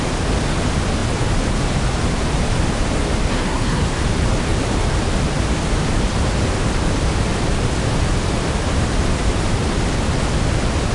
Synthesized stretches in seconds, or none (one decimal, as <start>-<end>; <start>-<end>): 3.3-4.0